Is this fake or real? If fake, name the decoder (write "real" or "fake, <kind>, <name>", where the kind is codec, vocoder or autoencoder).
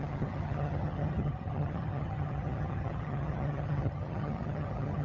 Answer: fake, vocoder, HiFi-GAN